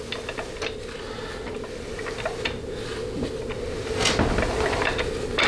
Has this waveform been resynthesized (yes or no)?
no